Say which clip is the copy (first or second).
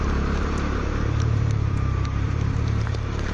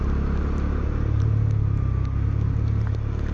first